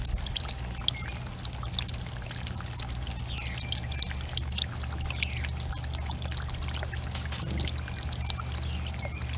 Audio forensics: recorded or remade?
recorded